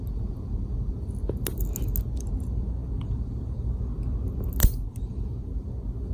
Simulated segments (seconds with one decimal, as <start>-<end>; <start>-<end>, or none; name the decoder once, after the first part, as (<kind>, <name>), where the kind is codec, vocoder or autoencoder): none